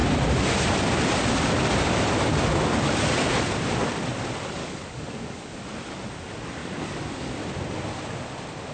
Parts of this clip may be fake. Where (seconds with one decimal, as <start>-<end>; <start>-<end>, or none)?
4.6-5.5; 6.6-7.3